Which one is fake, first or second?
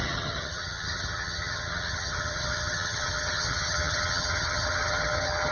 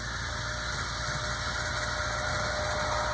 first